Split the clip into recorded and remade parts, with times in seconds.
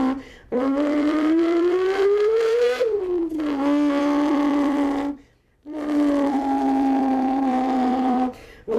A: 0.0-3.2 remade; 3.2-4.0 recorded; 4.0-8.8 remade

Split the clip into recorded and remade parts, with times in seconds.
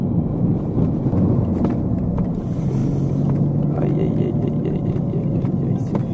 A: 0.0-6.1 recorded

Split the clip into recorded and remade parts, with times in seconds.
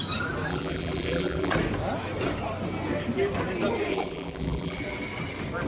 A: 0.0-0.5 recorded; 0.5-1.5 remade; 1.5-3.9 recorded; 3.9-4.8 remade; 4.8-5.7 recorded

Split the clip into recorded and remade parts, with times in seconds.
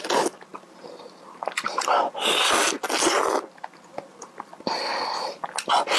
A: 0.0-6.0 recorded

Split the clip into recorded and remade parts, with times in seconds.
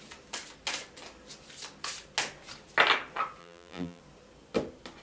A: 0.0-3.4 recorded; 3.4-4.0 remade; 4.0-5.0 recorded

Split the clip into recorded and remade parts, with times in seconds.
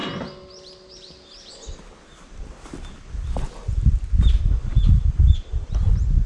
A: 0.0-0.9 recorded; 0.9-6.3 remade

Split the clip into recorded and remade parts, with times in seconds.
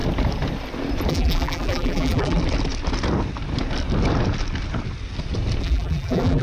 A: 0.0-1.1 recorded; 1.1-2.4 remade; 2.4-5.6 recorded; 5.6-6.4 remade